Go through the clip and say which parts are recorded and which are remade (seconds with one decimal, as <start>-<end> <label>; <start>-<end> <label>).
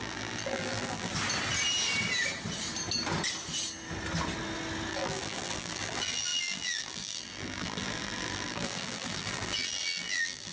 0.0-1.1 remade; 1.1-4.9 recorded; 4.9-10.5 remade